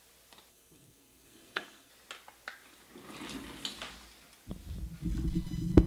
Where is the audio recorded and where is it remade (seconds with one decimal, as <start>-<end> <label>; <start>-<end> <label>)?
0.0-0.5 recorded; 0.5-1.9 remade; 1.9-5.9 recorded